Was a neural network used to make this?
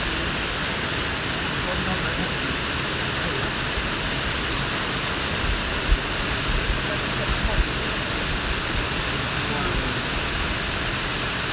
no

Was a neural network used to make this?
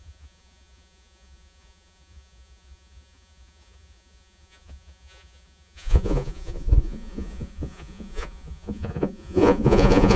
yes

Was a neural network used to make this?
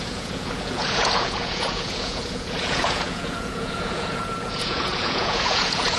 yes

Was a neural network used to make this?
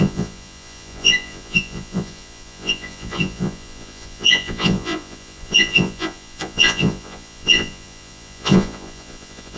yes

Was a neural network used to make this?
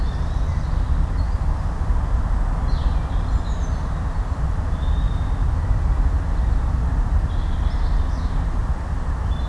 no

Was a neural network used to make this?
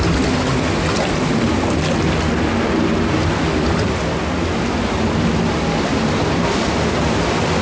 no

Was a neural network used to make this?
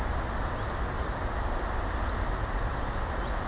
no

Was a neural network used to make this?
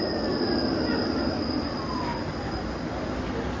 no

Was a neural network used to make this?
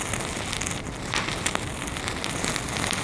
no